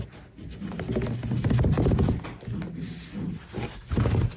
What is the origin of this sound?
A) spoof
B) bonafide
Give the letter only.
B